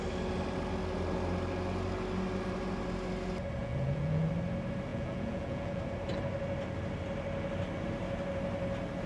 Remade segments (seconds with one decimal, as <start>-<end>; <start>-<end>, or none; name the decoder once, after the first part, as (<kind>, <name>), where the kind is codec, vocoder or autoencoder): 3.6-4.3 (vocoder, Vocos); 4.9-5.8